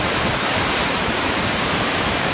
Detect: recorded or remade remade